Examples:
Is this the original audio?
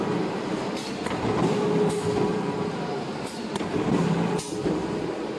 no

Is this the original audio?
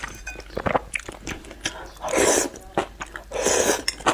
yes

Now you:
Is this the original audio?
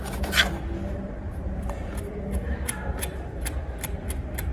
yes